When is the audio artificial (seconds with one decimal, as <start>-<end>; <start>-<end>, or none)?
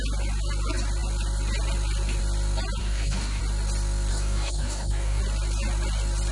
2.8-3.4; 4.1-5.2